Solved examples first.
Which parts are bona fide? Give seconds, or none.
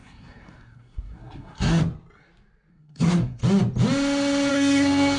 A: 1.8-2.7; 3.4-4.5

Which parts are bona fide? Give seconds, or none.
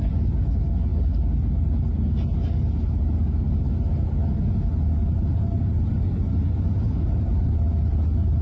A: 0.0-8.4